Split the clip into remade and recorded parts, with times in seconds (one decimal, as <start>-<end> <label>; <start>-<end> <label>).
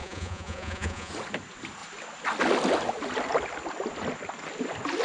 0.0-1.1 remade; 1.1-5.0 recorded